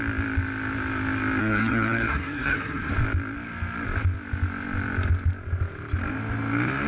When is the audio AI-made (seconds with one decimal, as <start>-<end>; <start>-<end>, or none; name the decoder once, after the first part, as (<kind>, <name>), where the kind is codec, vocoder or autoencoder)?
1.4-2.9 (codec, SNAC)